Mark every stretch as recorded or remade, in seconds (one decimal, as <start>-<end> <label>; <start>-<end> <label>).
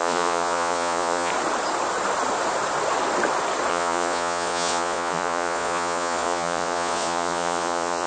0.0-1.3 remade; 1.3-3.7 recorded; 3.7-8.1 remade